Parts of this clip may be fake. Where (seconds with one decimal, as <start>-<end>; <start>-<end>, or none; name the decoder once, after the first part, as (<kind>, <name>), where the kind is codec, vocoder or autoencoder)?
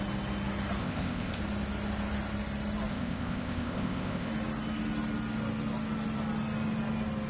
0.8-1.4 (codec, ZipCodec); 2.9-4.3